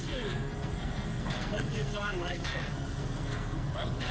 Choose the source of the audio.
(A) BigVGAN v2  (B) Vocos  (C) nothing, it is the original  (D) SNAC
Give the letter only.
D